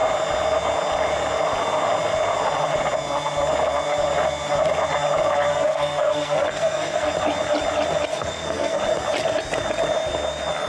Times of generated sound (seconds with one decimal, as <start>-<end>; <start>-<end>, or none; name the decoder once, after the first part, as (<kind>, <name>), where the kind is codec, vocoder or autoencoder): 5.5-7.1 (codec, SNAC); 8.1-8.8